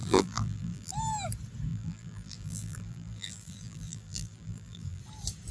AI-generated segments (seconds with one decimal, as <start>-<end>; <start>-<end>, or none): 0.0-0.9; 1.7-5.0